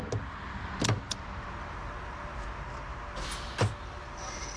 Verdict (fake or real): real